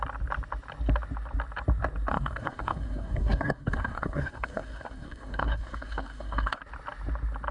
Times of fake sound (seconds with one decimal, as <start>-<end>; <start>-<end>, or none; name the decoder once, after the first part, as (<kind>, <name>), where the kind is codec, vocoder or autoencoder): 2.1-6.6 (codec, SNAC)